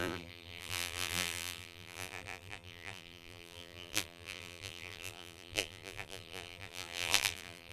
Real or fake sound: fake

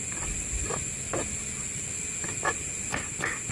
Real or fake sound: real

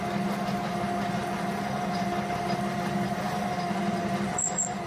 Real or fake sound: real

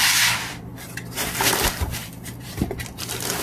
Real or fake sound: fake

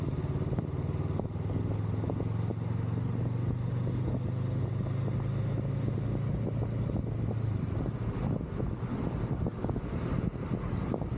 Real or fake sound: real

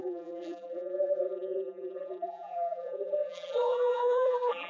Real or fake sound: fake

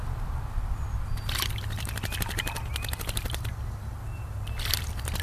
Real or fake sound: real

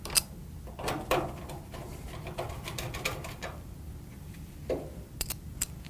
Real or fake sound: real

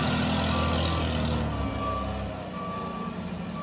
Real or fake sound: real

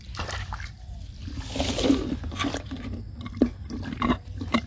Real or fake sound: real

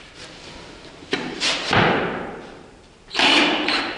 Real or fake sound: fake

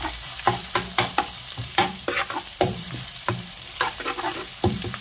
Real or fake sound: fake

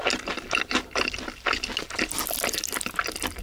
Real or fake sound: real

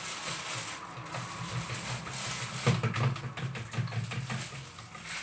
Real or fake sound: real